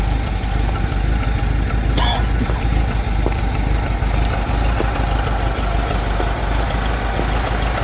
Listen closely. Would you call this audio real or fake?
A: real